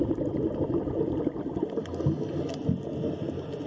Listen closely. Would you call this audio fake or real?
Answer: real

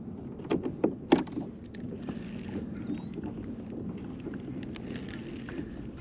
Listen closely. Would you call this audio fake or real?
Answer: real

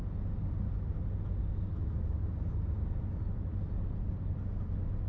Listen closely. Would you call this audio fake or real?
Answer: real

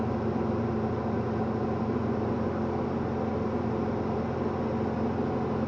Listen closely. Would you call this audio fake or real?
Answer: real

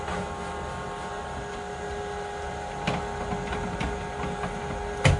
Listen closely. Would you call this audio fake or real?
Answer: real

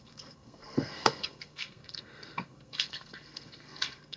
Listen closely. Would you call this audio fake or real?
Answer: fake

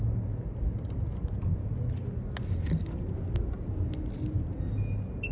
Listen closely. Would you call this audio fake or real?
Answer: real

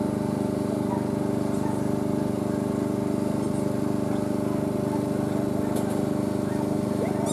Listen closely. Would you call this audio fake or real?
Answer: real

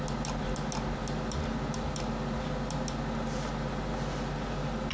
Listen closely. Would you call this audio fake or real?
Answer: real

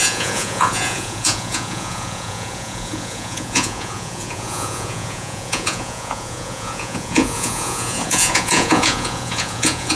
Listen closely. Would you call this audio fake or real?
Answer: fake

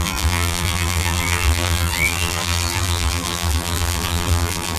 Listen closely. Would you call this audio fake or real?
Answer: fake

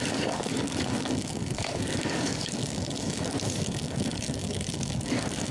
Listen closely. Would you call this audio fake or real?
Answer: fake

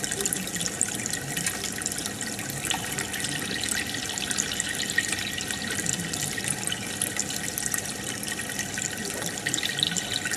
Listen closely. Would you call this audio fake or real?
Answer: real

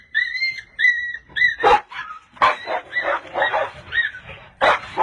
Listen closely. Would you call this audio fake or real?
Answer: fake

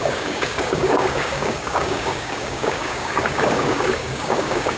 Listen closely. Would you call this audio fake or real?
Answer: fake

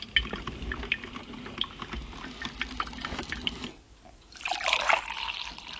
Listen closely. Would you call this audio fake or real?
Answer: real